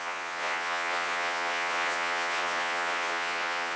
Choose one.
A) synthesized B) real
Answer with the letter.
A